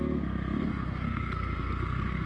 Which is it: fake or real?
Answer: fake